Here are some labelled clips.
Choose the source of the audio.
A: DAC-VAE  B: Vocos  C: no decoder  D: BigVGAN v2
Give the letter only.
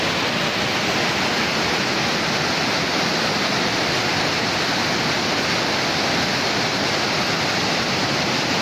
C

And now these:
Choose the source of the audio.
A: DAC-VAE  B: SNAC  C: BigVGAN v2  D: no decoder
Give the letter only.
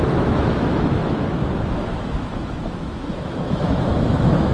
A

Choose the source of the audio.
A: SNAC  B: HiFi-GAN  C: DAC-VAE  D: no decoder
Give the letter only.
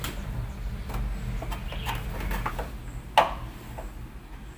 D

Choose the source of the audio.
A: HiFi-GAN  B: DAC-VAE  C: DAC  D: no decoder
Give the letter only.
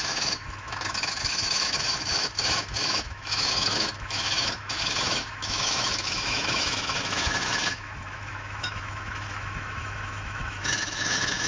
B